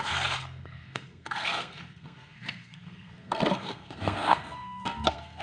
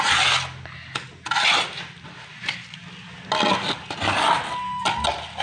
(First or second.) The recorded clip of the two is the second